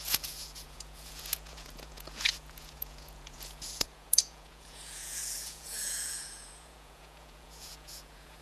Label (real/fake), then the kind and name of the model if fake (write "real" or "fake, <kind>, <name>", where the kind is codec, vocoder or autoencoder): fake, vocoder, Vocos